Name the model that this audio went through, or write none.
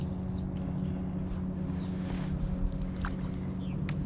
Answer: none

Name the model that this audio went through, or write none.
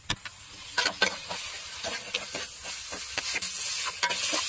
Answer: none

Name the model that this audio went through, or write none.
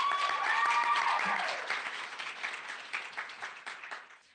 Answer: none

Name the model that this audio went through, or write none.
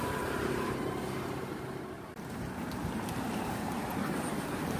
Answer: vocoder, BigVGAN v2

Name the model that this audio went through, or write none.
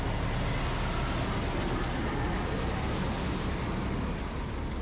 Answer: none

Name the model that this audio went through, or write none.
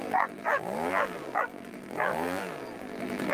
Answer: vocoder, BigVGAN v2